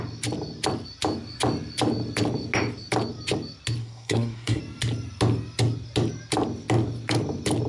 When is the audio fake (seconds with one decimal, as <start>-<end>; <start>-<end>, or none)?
3.8-4.6